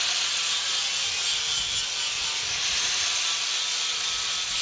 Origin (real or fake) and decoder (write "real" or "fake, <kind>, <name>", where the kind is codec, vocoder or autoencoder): real